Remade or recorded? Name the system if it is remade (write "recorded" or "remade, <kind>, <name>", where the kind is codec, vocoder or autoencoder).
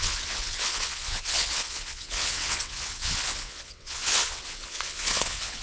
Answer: remade, vocoder, WaveNeXt